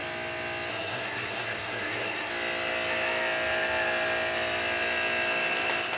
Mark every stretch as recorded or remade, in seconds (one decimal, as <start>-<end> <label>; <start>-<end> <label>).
0.0-0.7 recorded; 0.7-2.3 remade; 2.3-6.0 recorded